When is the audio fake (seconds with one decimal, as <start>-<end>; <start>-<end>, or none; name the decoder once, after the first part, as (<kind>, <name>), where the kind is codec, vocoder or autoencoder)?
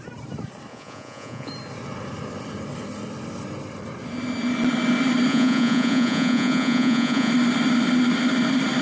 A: 0.7-1.5 (vocoder, Vocos); 5.3-7.3